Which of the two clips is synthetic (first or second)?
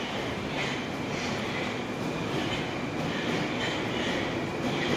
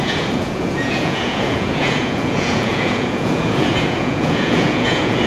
second